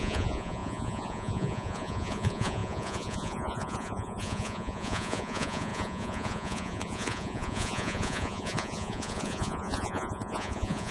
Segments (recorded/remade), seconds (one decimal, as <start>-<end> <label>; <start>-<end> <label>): 0.0-10.9 remade